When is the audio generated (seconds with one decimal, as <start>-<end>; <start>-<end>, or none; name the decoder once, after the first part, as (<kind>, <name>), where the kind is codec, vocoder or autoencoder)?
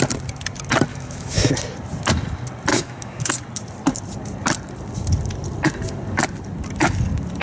0.9-1.5 (autoencoder, DAC-VAE); 2.7-3.3